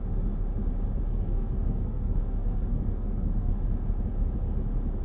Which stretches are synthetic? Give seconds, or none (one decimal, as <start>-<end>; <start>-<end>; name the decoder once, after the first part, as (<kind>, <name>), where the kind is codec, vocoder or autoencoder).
1.1-3.5 (codec, SNAC)